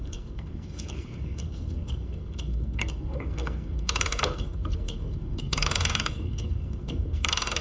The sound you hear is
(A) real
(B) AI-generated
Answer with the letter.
B